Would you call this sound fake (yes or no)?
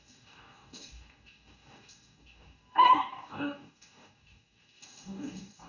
yes